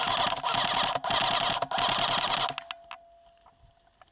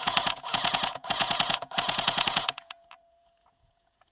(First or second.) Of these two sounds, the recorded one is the first